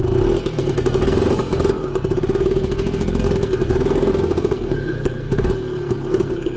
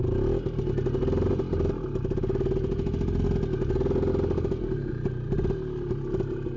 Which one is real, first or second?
second